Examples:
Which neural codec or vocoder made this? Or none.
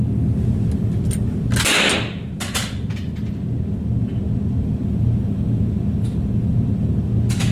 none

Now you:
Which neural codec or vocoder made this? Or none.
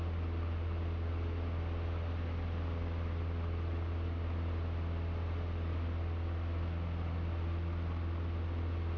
none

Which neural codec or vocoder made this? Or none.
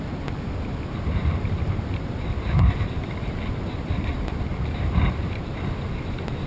none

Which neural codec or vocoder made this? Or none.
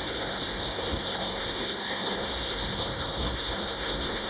codec, SNAC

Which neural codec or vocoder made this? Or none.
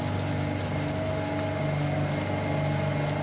none